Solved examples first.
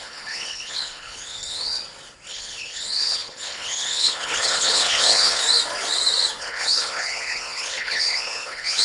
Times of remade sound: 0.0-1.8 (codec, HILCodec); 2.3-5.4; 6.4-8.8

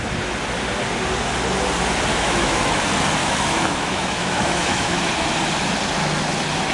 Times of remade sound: 2.1-2.8 (autoencoder, DAC-VAE); 3.2-5.1

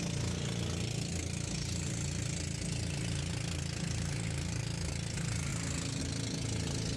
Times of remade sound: none